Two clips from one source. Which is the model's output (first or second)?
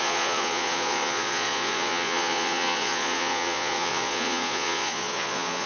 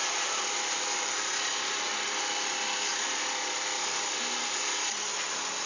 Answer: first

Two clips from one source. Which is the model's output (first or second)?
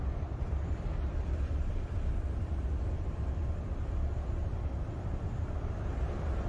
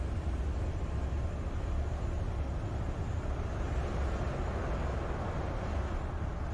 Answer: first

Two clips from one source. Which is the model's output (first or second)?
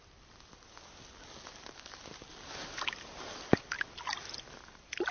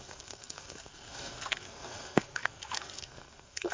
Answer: second